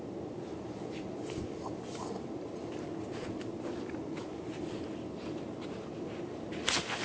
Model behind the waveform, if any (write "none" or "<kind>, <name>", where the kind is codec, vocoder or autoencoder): none